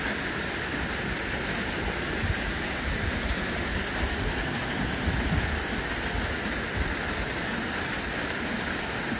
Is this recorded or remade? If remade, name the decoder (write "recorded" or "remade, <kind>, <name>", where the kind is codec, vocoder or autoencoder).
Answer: recorded